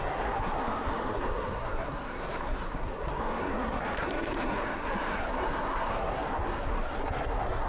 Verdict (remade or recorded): remade